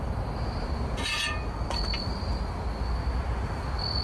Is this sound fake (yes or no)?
no